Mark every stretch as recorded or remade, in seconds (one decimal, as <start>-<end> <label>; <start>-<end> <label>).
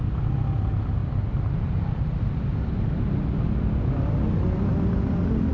0.0-5.5 recorded